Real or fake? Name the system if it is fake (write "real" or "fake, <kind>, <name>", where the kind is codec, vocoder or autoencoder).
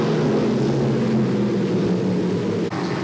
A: real